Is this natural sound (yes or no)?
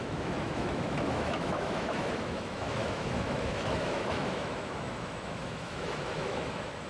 no